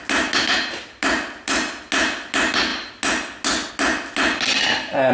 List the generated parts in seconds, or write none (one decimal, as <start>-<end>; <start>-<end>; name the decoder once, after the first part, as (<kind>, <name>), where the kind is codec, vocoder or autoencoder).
none